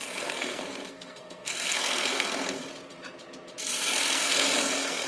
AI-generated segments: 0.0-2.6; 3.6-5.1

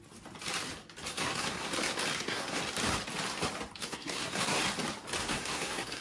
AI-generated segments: 1.1-1.7; 2.1-2.6; 3.8-4.6; 5.2-6.0